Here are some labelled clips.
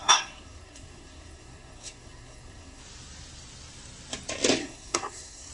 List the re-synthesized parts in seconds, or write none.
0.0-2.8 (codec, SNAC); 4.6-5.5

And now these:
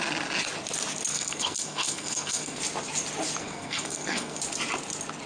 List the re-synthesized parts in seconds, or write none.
1.1-2.6 (codec, SNAC); 3.4-4.4

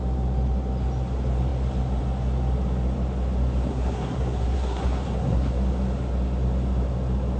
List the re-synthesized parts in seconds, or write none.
3.7-5.5 (codec, SNAC)

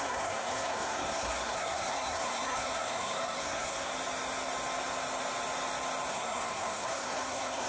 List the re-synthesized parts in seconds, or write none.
0.0-3.9 (codec, SNAC); 6.1-7.7

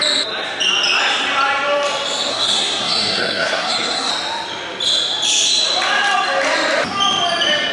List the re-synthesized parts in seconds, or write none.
2.3-4.1 (codec, SNAC)